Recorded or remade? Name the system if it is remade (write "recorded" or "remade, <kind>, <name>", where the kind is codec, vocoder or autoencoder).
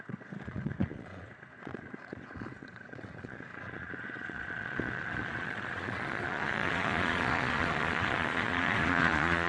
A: remade, vocoder, Vocos